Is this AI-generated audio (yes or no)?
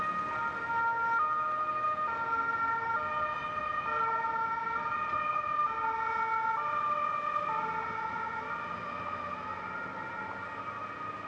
no